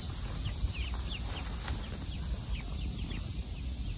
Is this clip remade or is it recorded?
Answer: recorded